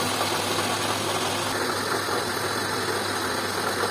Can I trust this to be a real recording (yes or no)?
yes